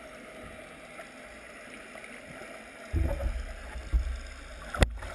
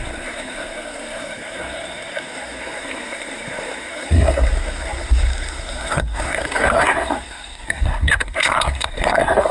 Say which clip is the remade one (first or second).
second